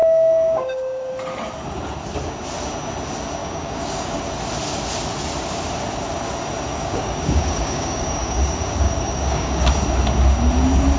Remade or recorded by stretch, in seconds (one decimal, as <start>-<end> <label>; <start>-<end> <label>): 0.0-1.1 remade; 1.1-3.4 recorded; 3.4-4.2 remade; 4.2-6.7 recorded; 6.7-9.7 remade; 9.7-11.0 recorded